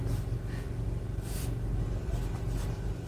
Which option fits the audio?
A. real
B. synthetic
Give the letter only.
A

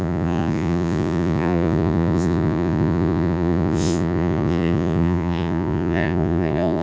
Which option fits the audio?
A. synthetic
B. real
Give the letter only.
A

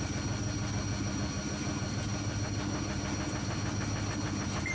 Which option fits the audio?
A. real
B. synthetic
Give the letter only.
A